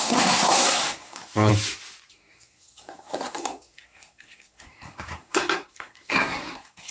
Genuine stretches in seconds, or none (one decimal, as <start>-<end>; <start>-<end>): 1.5-2.1